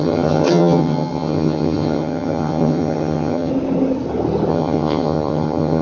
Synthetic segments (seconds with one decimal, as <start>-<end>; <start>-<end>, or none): 0.0-3.5; 4.5-5.8